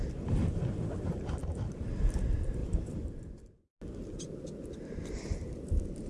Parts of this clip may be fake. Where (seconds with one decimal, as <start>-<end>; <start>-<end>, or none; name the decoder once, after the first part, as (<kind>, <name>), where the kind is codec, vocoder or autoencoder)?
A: none